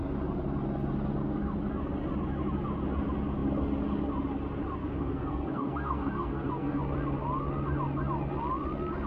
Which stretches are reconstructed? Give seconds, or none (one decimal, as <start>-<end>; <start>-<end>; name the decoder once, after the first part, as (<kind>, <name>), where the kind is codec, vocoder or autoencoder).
4.8-6.8 (codec, SNAC)